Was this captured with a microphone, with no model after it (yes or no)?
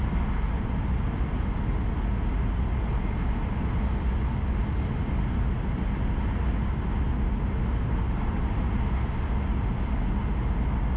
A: yes